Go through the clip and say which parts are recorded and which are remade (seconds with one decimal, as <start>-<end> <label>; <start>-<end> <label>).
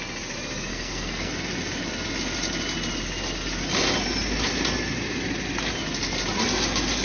0.0-0.7 recorded; 0.7-1.3 remade; 1.3-7.0 recorded